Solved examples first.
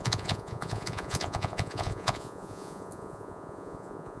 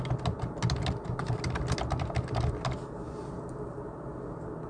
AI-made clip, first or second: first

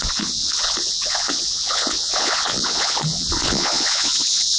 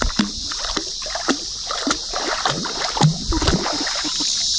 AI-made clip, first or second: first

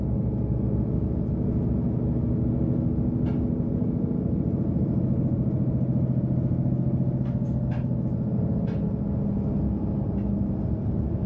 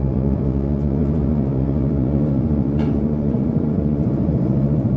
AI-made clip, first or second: second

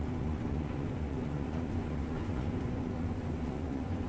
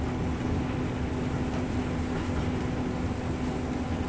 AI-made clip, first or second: first